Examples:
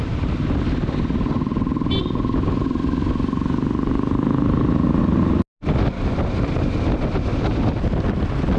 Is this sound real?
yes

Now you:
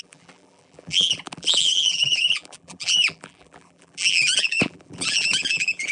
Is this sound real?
no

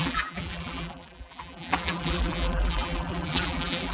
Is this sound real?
no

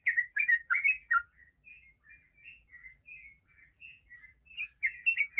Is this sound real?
no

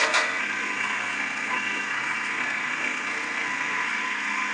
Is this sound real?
no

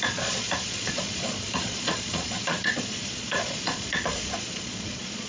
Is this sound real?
no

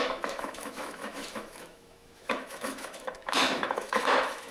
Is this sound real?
no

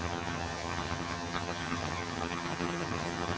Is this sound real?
no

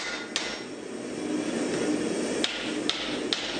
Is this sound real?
yes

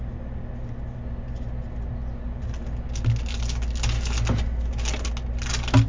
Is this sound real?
yes